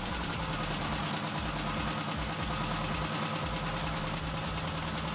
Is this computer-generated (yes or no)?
no